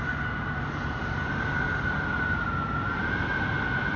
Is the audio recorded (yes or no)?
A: yes